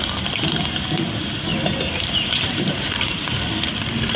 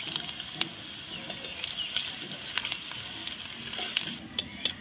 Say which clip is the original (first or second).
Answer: second